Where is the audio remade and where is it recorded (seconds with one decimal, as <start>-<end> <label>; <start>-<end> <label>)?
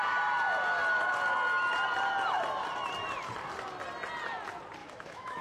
0.0-4.8 recorded; 4.8-5.4 remade